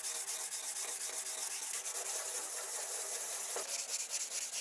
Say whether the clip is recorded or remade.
recorded